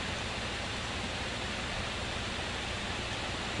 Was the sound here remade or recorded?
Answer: recorded